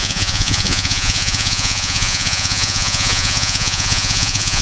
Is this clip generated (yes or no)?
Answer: yes